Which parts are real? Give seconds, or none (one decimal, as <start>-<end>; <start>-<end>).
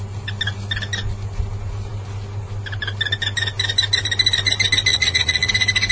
0.0-4.9; 5.5-5.9